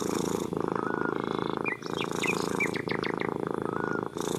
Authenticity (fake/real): real